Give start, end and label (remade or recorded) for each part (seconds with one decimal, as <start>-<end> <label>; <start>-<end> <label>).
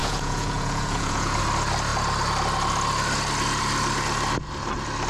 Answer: 0.0-1.4 remade; 1.4-5.1 recorded